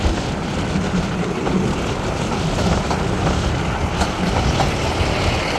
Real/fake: real